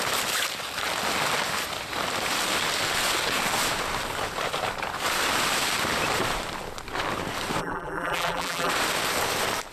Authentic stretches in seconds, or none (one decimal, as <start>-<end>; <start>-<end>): 0.0-7.6; 8.7-9.7